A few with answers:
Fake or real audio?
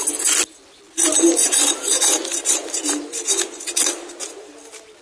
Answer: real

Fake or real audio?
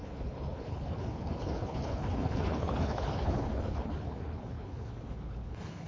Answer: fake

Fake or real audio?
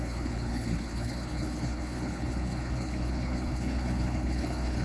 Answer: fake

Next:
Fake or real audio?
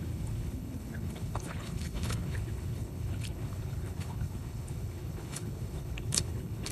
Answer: fake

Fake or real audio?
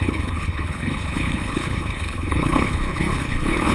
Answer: fake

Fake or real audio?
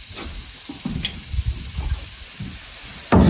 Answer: real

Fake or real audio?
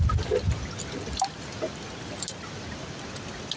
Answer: real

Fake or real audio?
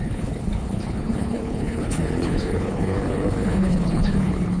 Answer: fake